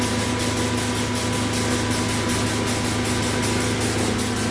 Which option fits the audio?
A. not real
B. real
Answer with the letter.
B